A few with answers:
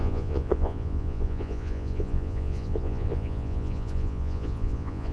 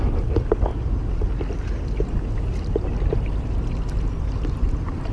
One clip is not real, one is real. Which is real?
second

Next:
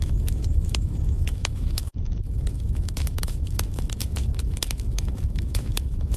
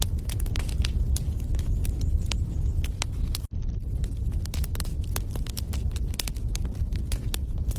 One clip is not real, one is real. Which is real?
second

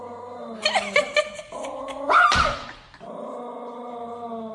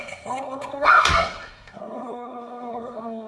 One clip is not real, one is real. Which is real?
first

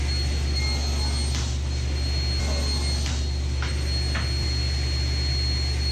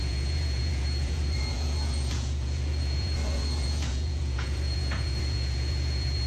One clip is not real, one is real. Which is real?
first